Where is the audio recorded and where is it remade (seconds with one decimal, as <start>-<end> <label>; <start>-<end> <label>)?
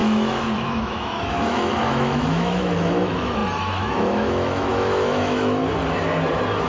0.0-5.6 remade; 5.6-6.7 recorded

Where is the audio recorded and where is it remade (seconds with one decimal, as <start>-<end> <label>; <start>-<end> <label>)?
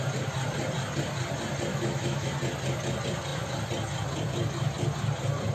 0.0-1.7 recorded; 1.7-2.3 remade; 2.3-5.5 recorded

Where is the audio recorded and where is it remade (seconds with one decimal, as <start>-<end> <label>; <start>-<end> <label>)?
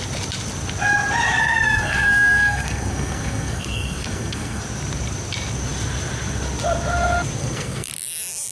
0.0-1.4 recorded; 1.4-4.6 remade; 4.6-7.4 recorded; 7.4-7.9 remade; 7.9-8.5 recorded